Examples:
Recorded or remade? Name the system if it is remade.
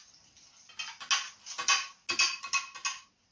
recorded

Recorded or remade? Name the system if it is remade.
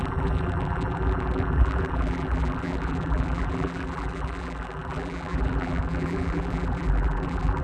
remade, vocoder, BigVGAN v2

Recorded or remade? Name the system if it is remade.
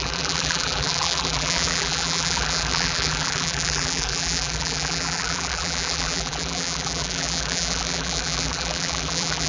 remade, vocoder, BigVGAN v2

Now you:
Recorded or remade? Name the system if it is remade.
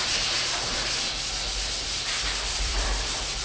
remade, vocoder, BigVGAN v2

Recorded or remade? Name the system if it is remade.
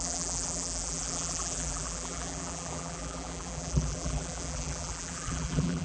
remade, vocoder, BigVGAN v2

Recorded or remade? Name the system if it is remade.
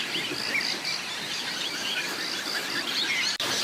remade, vocoder, BigVGAN v2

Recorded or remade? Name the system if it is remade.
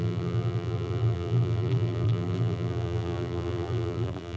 remade, vocoder, BigVGAN v2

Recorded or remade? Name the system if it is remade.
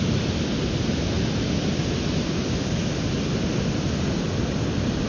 recorded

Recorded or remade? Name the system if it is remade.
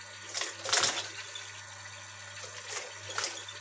recorded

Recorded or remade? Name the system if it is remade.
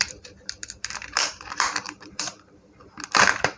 remade, vocoder, BigVGAN v2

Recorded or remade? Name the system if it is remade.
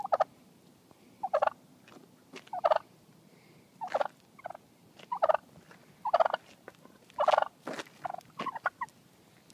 recorded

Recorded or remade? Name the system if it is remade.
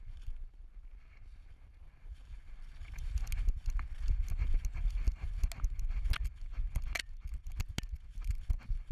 recorded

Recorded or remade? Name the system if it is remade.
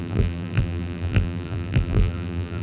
remade, vocoder, BigVGAN v2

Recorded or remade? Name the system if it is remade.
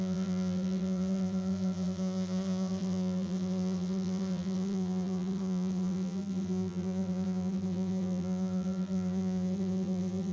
remade, vocoder, BigVGAN v2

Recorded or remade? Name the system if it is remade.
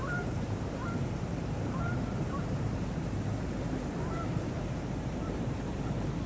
remade, vocoder, BigVGAN v2